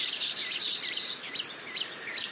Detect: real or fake fake